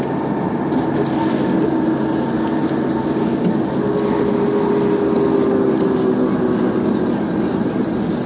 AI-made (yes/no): no